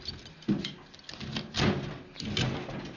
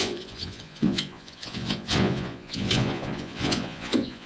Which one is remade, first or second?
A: second